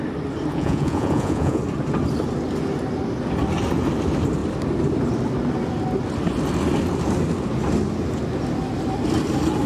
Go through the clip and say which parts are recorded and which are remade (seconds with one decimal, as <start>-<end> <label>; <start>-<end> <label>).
0.0-0.5 recorded; 0.5-1.6 remade; 1.6-9.7 recorded